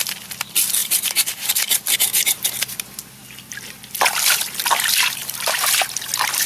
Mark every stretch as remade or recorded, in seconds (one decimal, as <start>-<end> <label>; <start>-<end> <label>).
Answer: 0.0-0.8 recorded; 0.8-2.5 remade; 2.5-5.2 recorded; 5.2-5.8 remade; 5.8-6.5 recorded